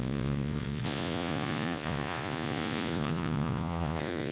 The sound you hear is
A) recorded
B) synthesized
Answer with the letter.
B